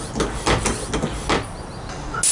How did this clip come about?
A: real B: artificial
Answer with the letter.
A